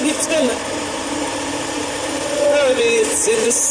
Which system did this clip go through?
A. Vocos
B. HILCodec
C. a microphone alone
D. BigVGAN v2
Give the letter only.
D